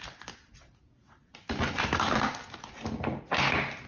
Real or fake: real